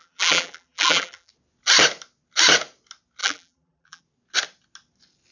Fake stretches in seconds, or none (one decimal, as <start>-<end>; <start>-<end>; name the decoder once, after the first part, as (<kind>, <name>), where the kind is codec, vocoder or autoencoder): 0.0-1.3 (vocoder, BigVGAN v2); 3.2-4.0